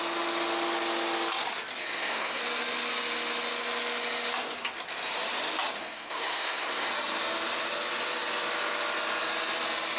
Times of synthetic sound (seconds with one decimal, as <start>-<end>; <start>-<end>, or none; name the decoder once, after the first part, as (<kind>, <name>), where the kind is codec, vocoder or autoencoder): 1.8-2.4 (codec, SNAC); 5.8-6.9

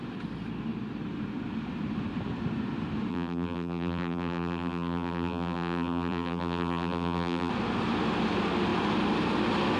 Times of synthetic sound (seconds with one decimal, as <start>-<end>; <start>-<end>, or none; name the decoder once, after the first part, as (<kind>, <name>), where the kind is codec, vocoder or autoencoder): 3.1-7.5 (vocoder, BigVGAN v2)

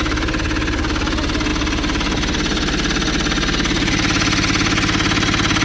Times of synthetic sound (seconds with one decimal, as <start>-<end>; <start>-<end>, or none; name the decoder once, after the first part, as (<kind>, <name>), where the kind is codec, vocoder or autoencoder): none

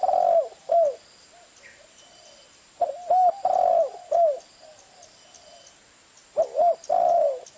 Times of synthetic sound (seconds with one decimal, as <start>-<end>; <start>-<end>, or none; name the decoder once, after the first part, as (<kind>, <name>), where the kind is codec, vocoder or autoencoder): none

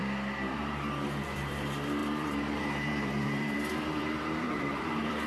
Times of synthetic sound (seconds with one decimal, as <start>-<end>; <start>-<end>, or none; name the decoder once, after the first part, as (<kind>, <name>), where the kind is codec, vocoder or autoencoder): 0.0-5.3 (vocoder, BigVGAN v2)

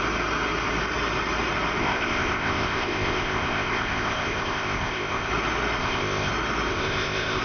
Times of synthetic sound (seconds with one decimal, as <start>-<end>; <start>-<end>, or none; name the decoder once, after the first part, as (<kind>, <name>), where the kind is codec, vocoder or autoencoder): 1.8-5.3 (codec, ZipCodec); 5.8-6.3; 6.7-7.4

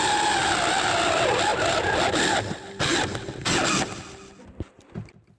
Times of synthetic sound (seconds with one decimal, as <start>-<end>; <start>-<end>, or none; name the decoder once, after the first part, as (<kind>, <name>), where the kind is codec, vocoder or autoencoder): none